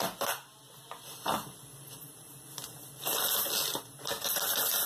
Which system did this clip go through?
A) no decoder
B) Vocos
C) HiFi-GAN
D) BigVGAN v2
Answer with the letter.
A